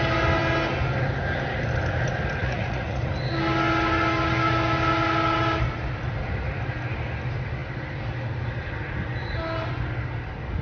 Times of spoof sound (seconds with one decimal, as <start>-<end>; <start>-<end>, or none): 2.4-3.1